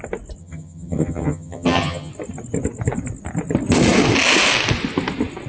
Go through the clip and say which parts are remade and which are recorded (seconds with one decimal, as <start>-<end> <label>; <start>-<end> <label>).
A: 0.0-0.4 recorded; 0.4-2.1 remade; 2.1-5.5 recorded

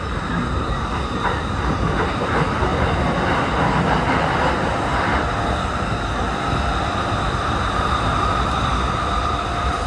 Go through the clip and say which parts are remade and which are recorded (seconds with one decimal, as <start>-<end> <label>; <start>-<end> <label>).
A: 0.0-9.9 recorded